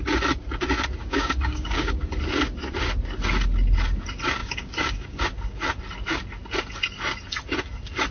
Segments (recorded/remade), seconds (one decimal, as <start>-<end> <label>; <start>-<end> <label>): 0.0-1.0 recorded; 1.0-2.0 remade; 2.0-4.4 recorded; 4.4-5.2 remade; 5.2-8.1 recorded